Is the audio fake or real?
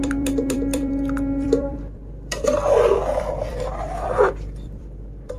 fake